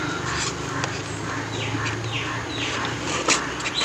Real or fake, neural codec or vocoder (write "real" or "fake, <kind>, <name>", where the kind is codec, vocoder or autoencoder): real